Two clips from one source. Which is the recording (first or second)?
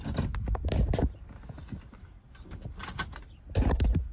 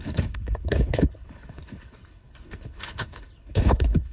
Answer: first